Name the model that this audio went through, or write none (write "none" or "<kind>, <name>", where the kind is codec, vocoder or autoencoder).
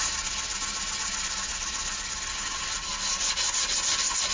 none